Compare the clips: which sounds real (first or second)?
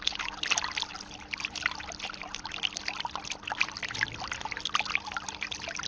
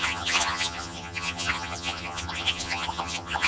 first